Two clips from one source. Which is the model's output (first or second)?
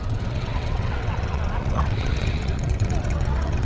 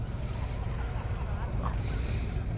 first